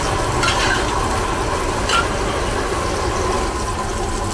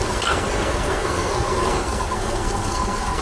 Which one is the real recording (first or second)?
first